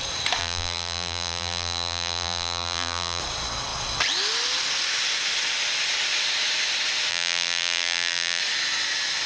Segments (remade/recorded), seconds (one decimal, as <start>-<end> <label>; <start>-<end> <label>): 0.0-0.4 recorded; 0.4-3.2 remade; 3.2-7.1 recorded; 7.1-8.4 remade; 8.4-9.3 recorded